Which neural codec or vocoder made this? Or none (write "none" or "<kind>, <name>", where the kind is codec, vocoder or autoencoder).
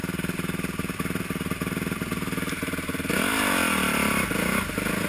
none